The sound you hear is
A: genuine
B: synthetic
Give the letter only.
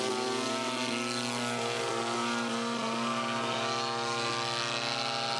A